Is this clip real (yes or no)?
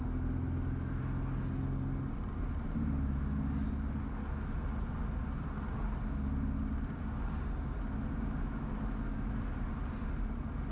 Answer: yes